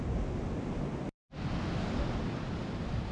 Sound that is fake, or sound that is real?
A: real